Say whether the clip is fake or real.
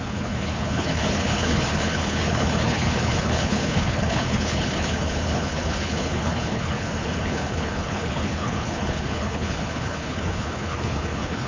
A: fake